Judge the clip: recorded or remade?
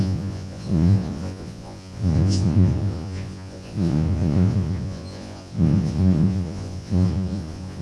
remade